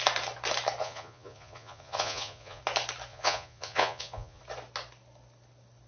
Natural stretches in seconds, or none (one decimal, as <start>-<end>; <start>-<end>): 0.0-0.8; 2.6-3.1; 4.4-5.9

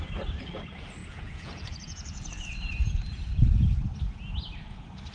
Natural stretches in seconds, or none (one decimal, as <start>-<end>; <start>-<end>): 0.0-1.0; 2.4-5.1

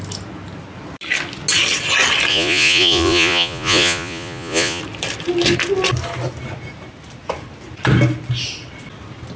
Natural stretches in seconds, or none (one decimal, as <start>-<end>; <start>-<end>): 0.0-2.3; 4.8-9.4

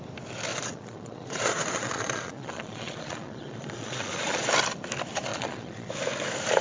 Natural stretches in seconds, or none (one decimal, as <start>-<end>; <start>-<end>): 0.0-0.5; 4.5-5.3; 5.9-6.6